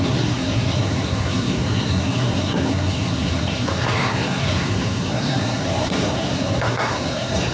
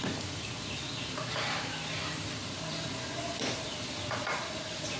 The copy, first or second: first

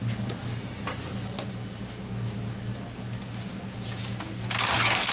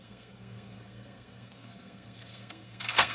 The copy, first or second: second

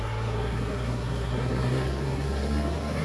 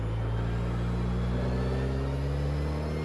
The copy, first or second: first